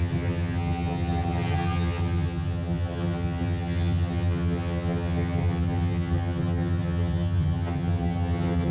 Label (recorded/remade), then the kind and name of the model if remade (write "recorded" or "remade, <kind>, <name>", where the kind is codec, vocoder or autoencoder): remade, vocoder, HiFi-GAN